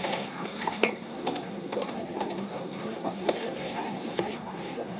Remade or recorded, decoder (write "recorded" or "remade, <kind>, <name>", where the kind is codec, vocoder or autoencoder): remade, codec, SNAC